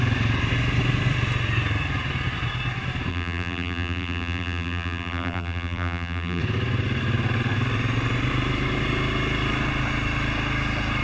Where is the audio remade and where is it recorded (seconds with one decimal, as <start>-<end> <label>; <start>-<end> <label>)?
0.0-3.1 recorded; 3.1-6.4 remade; 6.4-11.0 recorded